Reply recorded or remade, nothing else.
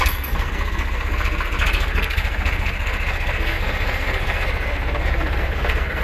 remade